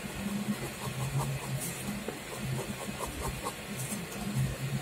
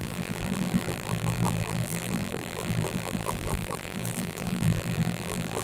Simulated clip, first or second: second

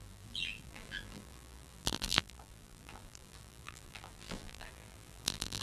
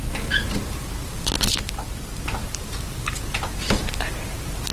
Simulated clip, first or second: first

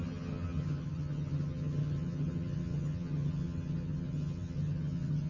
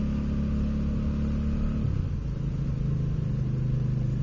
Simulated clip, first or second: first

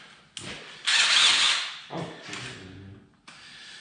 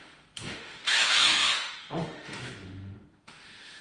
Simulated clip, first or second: second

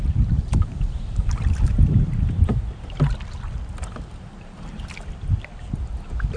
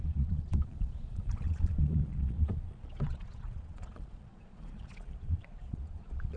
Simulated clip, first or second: second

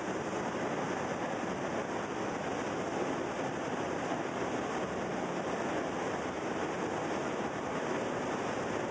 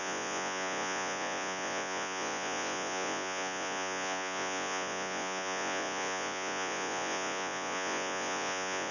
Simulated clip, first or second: second